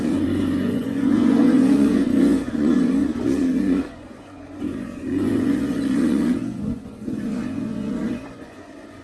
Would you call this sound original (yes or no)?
no